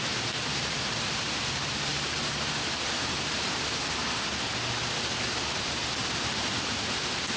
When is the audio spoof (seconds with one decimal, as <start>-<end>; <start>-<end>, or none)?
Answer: 0.0-4.0; 5.4-7.4

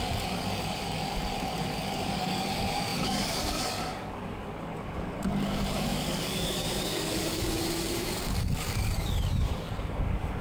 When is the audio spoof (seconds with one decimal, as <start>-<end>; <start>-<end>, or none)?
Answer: 0.0-10.4

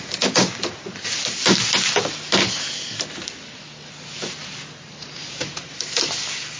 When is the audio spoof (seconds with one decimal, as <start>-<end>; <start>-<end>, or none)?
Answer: none

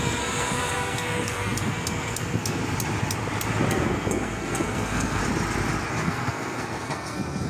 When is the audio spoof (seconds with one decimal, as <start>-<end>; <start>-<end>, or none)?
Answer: 0.0-2.6; 3.7-5.2; 5.9-7.5

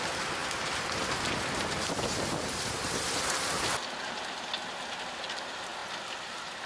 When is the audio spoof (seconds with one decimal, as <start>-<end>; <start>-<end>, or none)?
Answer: none

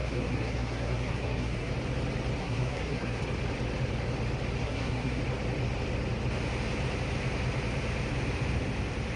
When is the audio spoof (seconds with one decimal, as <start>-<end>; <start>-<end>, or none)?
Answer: 0.0-1.7; 2.4-3.2; 4.6-5.2